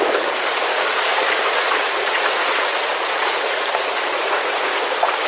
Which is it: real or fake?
fake